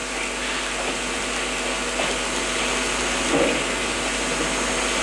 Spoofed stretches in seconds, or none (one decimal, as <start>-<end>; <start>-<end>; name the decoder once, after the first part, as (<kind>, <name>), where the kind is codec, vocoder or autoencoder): none